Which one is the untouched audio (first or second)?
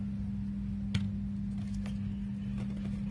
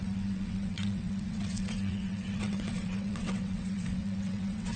first